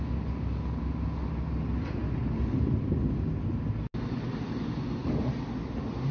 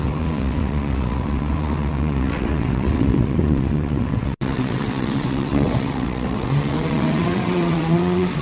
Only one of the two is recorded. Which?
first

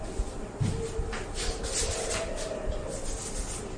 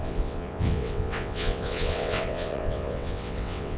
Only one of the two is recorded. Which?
first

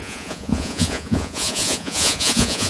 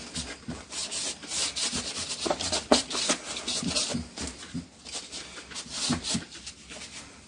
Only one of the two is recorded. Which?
second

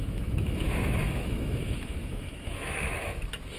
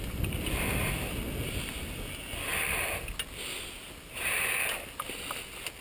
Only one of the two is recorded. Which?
second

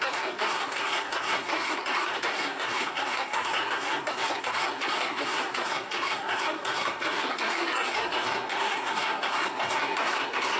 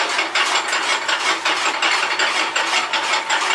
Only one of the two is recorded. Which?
second